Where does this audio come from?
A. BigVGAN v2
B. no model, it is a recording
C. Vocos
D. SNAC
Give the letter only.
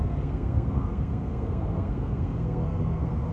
D